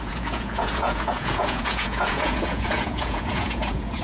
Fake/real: fake